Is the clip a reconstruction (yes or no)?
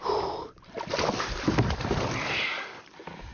no